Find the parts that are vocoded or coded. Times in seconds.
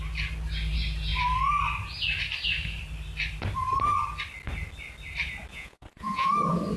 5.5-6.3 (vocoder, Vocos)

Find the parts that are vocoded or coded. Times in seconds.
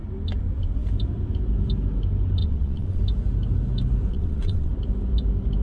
2.4-3.0 (vocoder, WaveNeXt); 4.1-4.7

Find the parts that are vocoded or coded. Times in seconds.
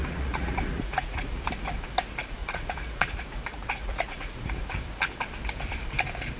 0.0-1.5 (vocoder, Vocos); 2.4-4.5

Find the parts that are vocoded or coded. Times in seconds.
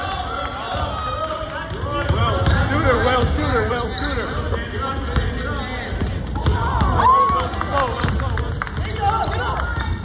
none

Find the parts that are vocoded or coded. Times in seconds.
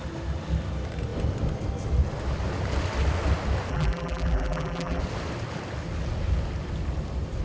3.7-5.0 (vocoder, BigVGAN v2)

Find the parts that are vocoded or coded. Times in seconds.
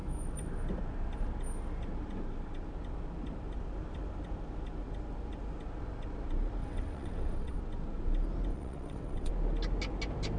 6.6-7.6 (vocoder, WaveNeXt); 8.5-9.3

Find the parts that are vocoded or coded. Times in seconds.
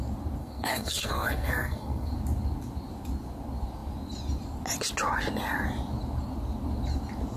0.4-2.1 (codec, SNAC)